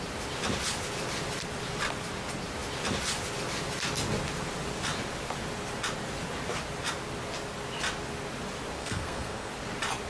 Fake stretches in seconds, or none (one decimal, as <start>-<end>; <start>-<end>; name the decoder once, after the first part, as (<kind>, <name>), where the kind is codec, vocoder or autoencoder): 8.8-9.5 (codec, SNAC)